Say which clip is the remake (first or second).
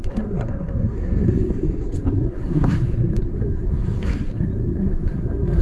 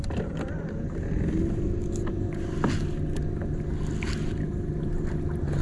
first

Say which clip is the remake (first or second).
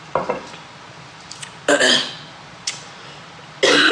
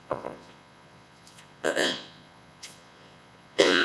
second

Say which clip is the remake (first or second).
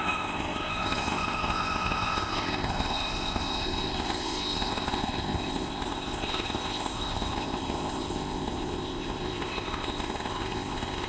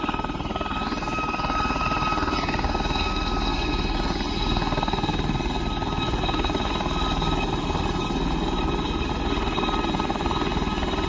first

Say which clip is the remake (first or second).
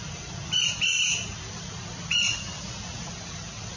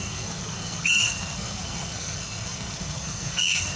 second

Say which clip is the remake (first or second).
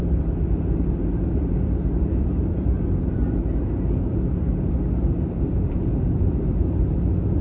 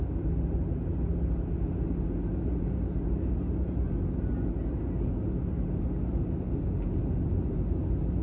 first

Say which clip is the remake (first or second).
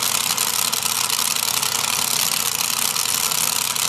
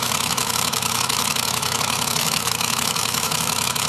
second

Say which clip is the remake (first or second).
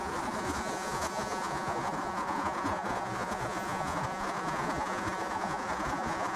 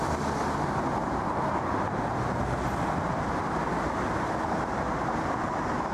first